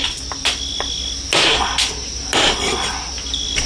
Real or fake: real